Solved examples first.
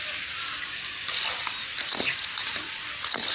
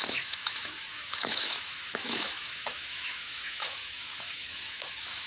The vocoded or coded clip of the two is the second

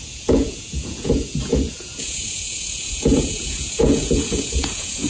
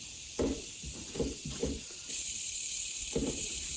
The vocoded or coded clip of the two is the first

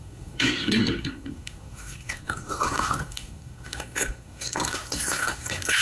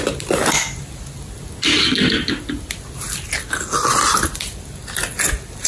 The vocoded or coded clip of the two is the first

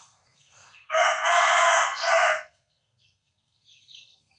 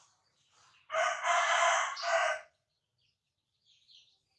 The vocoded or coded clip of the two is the first